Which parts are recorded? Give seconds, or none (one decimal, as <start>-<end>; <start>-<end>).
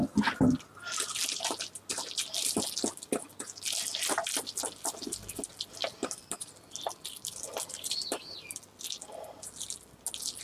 0.0-5.8; 8.2-10.4